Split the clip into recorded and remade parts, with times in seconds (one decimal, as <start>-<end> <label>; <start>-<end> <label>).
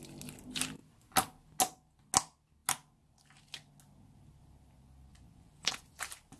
0.0-5.1 recorded; 5.1-6.0 remade; 6.0-6.4 recorded